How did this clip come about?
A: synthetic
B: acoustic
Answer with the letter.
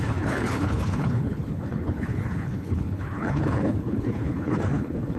A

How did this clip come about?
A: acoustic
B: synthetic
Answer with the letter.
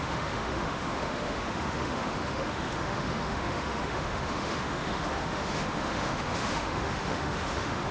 B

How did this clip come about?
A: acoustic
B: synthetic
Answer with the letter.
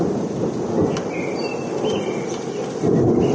A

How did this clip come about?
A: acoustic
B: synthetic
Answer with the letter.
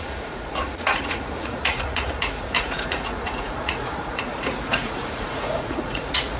B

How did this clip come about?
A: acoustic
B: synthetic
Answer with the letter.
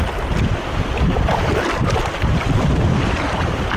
A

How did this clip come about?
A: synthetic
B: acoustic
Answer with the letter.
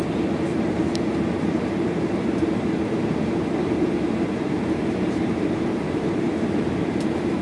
A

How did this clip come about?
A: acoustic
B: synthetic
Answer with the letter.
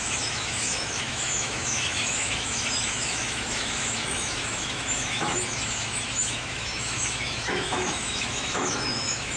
B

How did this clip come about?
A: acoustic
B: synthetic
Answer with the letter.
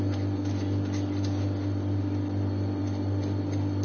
A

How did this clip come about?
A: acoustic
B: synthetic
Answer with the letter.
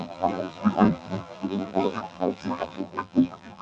B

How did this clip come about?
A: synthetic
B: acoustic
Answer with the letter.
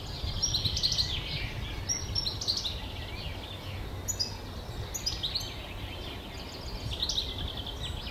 B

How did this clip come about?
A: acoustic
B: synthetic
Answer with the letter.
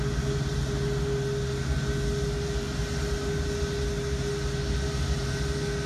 A